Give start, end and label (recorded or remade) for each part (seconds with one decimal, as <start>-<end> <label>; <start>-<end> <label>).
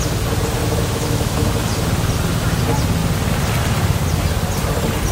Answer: 0.0-0.6 recorded; 0.6-1.5 remade; 1.5-5.1 recorded